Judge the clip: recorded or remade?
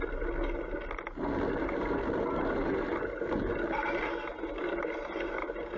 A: recorded